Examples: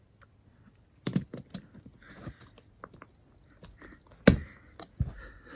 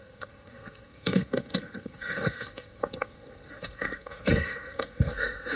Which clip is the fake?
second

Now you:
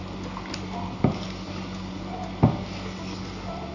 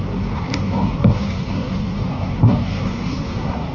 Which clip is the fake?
second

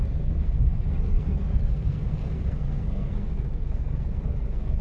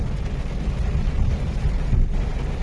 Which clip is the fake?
first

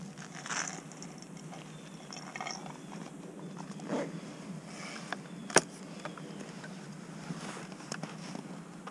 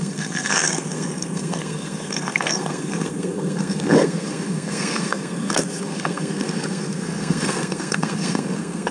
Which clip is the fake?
second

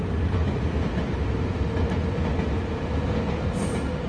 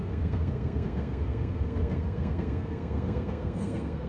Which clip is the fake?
second